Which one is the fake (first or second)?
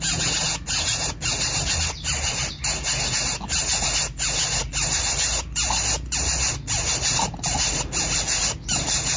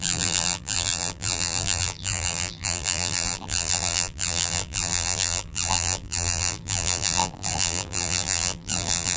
second